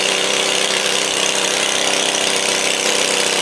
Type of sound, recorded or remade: remade